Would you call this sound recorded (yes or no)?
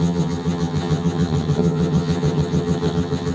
no